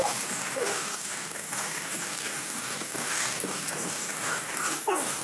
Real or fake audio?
fake